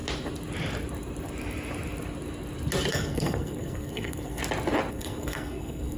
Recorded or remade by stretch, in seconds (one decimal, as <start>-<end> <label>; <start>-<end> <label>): 0.0-2.9 recorded; 2.9-4.4 remade; 4.4-4.9 recorded; 4.9-6.0 remade